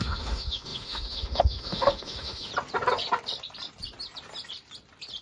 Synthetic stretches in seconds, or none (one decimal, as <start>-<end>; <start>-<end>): 0.0-2.5